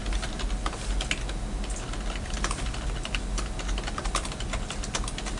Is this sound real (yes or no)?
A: yes